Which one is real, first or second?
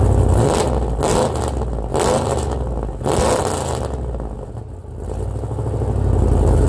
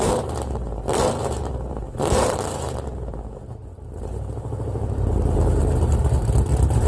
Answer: first